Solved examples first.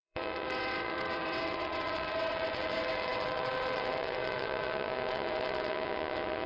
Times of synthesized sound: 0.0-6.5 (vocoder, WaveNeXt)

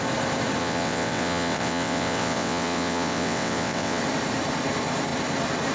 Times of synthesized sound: 0.6-4.0 (vocoder, WaveNeXt)